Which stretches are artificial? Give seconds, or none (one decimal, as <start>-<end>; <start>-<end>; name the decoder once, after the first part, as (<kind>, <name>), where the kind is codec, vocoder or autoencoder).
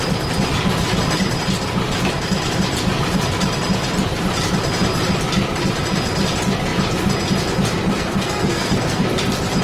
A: 7.9-9.0 (codec, SNAC)